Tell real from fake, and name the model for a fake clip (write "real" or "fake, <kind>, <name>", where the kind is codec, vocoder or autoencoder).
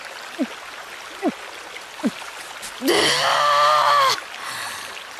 real